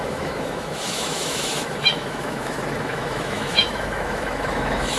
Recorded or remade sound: remade